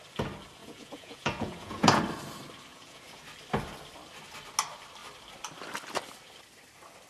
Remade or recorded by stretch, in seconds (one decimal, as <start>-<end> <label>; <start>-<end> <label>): 0.0-0.6 recorded; 0.6-2.0 remade; 2.0-2.7 recorded; 2.7-3.2 remade; 3.2-7.1 recorded